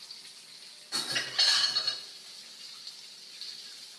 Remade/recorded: recorded